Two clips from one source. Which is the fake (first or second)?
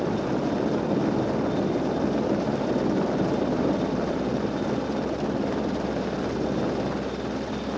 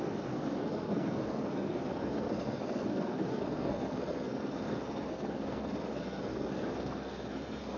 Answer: second